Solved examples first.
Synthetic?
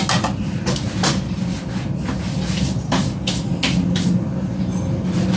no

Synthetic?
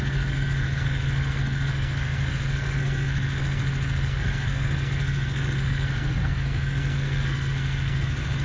yes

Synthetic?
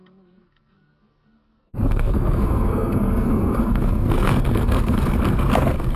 yes